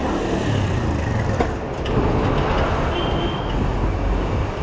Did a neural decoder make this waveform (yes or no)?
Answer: no